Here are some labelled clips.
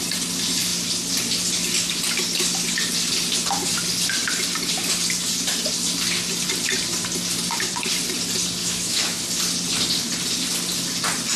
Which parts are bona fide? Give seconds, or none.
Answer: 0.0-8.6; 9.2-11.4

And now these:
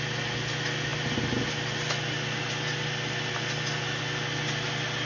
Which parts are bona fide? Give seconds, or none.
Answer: 0.0-5.1

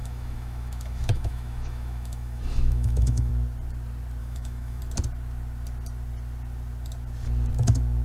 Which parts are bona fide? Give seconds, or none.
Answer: 3.3-4.2; 4.8-8.0

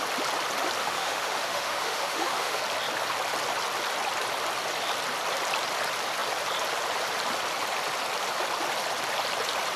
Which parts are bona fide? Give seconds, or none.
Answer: 0.0-0.8; 2.6-9.8

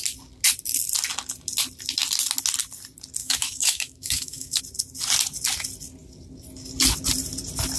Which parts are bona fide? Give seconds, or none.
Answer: 0.0-3.2; 4.6-7.8

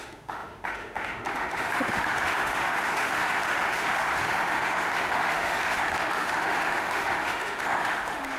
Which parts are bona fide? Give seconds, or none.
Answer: none